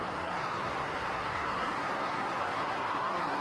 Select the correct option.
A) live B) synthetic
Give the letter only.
B